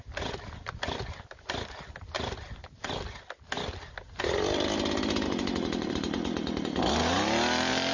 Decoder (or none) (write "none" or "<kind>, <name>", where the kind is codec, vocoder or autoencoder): none